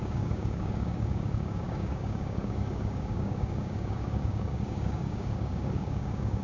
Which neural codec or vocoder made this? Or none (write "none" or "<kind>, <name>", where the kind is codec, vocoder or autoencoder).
codec, DAC